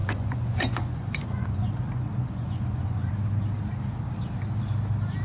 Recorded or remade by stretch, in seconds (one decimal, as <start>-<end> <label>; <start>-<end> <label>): 0.0-3.1 remade; 3.1-5.2 recorded

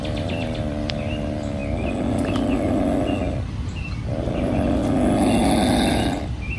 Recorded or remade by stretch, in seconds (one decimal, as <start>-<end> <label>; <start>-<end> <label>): 0.0-1.6 remade; 1.6-3.3 recorded; 3.3-4.8 remade; 4.8-5.4 recorded; 5.4-6.6 remade

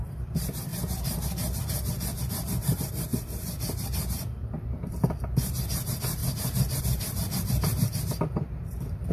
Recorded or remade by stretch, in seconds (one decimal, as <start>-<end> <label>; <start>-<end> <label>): 0.0-0.7 remade; 0.7-2.2 recorded; 2.2-9.1 remade

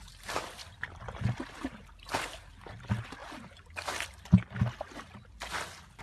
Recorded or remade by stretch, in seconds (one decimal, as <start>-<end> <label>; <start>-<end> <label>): 0.0-6.0 recorded

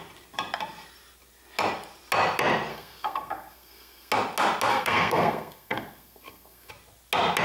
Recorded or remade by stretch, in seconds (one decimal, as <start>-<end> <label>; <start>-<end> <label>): 0.0-2.7 recorded; 2.7-4.1 remade; 4.1-4.7 recorded; 4.7-6.7 remade; 6.7-7.4 recorded

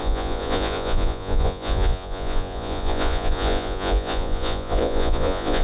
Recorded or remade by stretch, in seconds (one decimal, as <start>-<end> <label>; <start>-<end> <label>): 0.0-5.6 remade

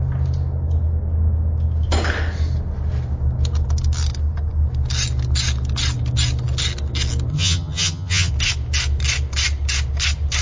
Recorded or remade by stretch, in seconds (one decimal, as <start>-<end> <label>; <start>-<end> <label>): 0.0-7.3 recorded; 7.3-8.3 remade; 8.3-10.4 recorded